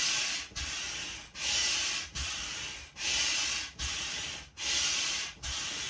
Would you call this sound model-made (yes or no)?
yes